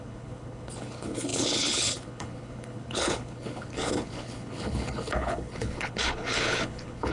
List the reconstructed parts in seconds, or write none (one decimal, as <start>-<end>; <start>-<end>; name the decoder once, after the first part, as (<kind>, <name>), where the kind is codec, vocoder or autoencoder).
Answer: 0.0-7.1 (codec, HILCodec)